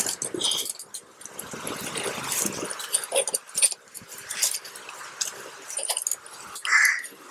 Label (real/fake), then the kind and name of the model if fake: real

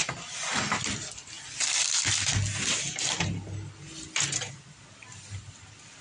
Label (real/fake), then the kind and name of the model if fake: real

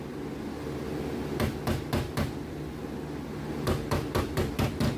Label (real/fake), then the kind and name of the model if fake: real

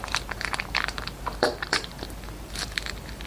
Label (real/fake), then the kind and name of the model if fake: fake, vocoder, BigVGAN v2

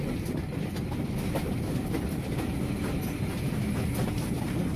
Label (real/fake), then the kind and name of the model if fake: real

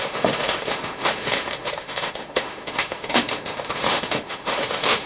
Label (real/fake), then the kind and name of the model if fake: fake, autoencoder, DAC-VAE